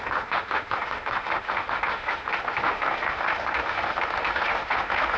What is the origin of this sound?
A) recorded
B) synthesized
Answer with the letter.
B